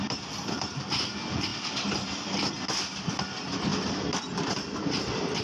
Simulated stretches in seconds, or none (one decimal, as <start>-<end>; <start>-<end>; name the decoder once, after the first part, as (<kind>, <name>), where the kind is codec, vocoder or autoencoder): 1.5-2.5 (vocoder, BigVGAN v2); 3.7-5.4